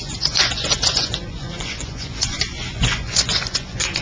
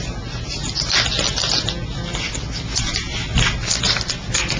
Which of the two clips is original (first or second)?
second